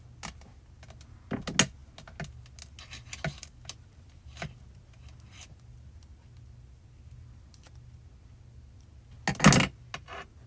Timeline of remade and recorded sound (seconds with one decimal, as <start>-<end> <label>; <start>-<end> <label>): 0.0-10.5 recorded